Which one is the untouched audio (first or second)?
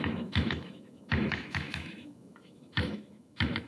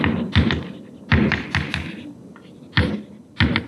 second